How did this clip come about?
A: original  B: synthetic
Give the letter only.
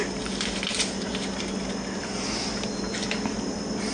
A